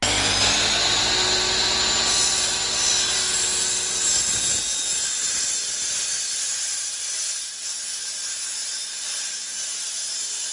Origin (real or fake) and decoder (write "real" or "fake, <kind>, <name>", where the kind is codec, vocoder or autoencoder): real